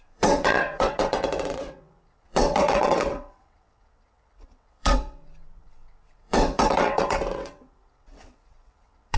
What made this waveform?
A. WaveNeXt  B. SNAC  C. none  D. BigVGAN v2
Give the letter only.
A